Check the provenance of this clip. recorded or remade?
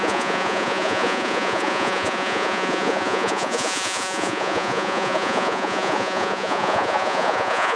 remade